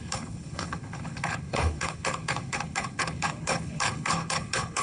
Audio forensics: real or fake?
fake